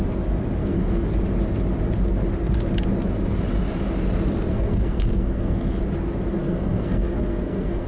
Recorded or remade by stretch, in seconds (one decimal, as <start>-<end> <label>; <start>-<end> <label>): 0.0-0.6 recorded; 0.6-1.1 remade; 1.1-4.5 recorded; 4.5-5.8 remade; 5.8-6.4 recorded; 6.4-7.9 remade